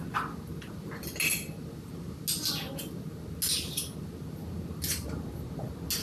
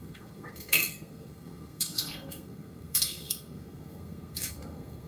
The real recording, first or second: first